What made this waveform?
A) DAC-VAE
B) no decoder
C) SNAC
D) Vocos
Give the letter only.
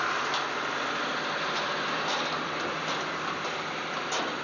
B